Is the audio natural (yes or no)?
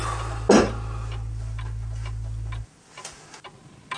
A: yes